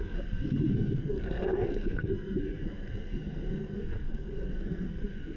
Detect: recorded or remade remade